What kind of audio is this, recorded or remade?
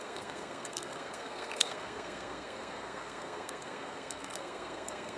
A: remade